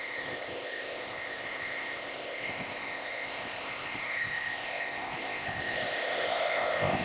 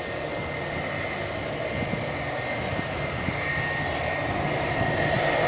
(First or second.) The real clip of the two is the second